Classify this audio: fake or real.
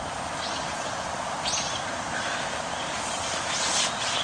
real